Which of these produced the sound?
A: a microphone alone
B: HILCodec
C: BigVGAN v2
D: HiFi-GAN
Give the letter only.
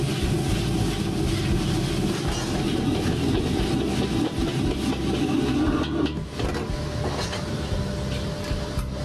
A